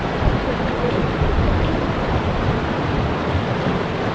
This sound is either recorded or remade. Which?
recorded